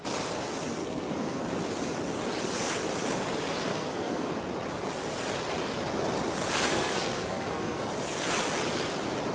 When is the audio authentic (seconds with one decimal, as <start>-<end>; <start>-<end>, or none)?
0.0-0.8; 1.4-3.7; 4.3-6.7; 7.9-9.3